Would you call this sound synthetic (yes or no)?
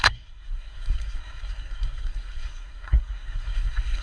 yes